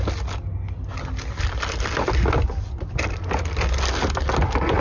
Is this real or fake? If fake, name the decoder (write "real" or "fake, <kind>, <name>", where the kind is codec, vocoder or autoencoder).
real